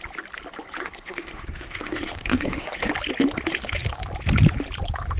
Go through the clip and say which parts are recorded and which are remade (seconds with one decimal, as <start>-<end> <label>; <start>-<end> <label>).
0.0-0.8 recorded; 0.8-2.9 remade; 2.9-5.2 recorded